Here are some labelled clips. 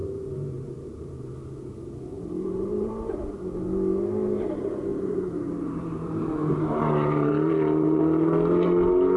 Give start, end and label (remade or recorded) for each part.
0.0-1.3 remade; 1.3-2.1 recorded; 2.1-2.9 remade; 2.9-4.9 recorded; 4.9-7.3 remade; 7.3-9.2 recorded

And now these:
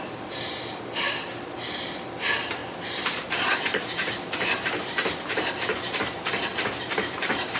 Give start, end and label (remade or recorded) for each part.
0.0-2.6 recorded; 2.6-7.6 remade

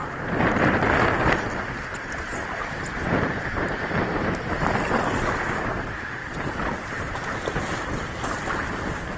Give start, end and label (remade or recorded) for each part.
0.0-0.6 remade; 0.6-2.9 recorded; 2.9-4.7 remade; 4.7-6.2 recorded; 6.2-8.4 remade; 8.4-9.2 recorded

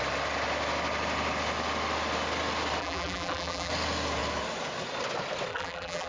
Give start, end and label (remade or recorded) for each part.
0.0-2.8 recorded; 2.8-3.7 remade; 3.7-5.5 recorded; 5.5-6.1 remade

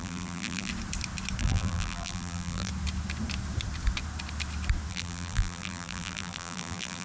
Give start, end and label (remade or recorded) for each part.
0.0-0.7 remade; 0.7-1.4 recorded; 1.4-2.7 remade; 2.7-4.9 recorded; 4.9-7.0 remade

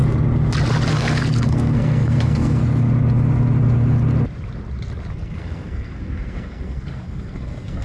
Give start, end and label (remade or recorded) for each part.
0.0-0.9 recorded; 0.9-2.6 remade; 2.6-5.1 recorded; 5.1-7.8 remade

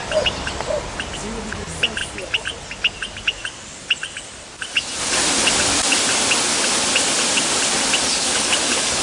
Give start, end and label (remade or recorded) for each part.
0.0-8.1 recorded; 8.1-9.0 remade